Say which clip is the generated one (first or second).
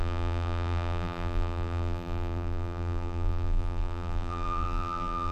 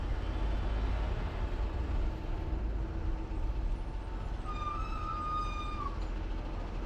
first